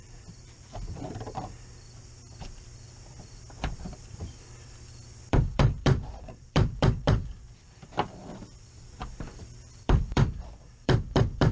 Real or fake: fake